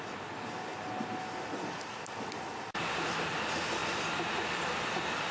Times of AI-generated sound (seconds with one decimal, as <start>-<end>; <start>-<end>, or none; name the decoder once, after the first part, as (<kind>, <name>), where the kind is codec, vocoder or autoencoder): 0.0-3.8 (vocoder, BigVGAN v2); 4.5-5.3